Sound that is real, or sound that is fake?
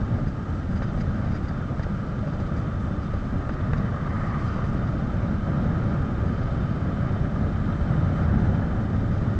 real